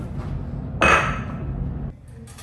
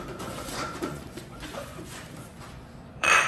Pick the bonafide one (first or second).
first